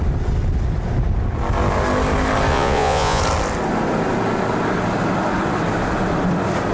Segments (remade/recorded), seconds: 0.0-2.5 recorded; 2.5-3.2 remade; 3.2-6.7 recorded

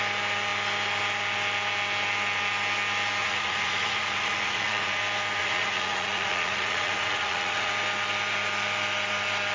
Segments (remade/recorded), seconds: 0.0-3.2 recorded; 3.2-5.0 remade; 5.0-5.4 recorded; 5.4-7.7 remade; 7.7-9.5 recorded

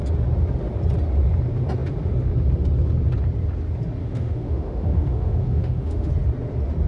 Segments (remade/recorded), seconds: 0.0-4.0 recorded; 4.0-6.1 remade; 6.1-6.9 recorded

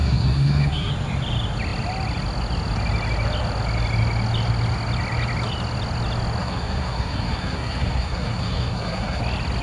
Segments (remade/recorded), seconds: 0.0-0.9 remade; 0.9-6.4 recorded; 6.4-9.2 remade; 9.2-9.6 recorded

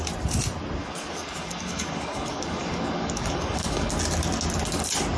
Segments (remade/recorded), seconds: 0.0-0.8 recorded; 0.8-3.9 remade; 3.9-5.2 recorded

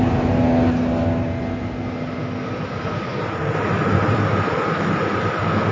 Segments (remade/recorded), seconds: 0.0-5.7 recorded